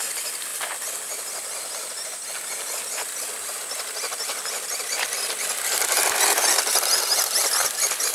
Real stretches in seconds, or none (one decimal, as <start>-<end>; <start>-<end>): 0.0-8.1